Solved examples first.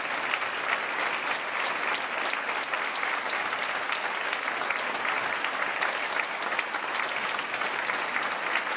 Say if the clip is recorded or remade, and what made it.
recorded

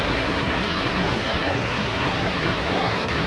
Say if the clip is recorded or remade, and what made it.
remade, codec, SNAC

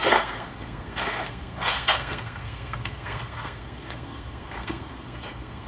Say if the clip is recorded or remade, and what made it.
remade, codec, SNAC